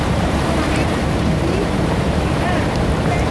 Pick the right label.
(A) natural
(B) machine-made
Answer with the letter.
B